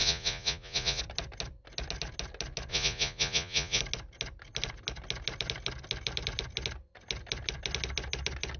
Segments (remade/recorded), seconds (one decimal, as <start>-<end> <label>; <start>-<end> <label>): 0.0-1.0 remade; 1.0-2.7 recorded; 2.7-3.8 remade; 3.8-8.6 recorded